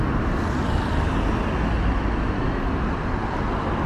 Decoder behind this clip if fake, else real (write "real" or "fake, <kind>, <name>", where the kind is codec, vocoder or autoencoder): real